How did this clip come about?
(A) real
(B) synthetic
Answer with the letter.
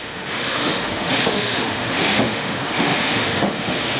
B